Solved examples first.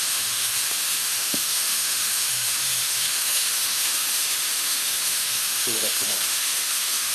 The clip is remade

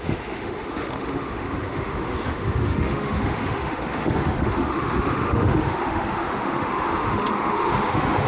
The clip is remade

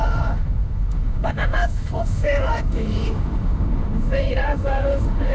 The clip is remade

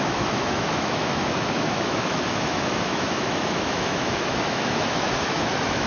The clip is remade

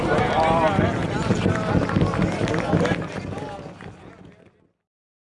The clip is recorded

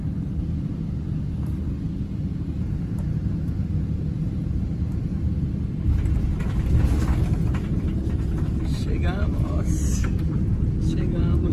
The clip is recorded